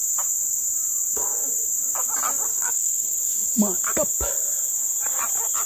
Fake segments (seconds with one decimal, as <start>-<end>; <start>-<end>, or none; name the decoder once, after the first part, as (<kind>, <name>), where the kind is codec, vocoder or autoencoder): 2.5-3.2 (codec, SNAC)